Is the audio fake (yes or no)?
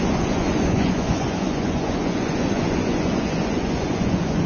yes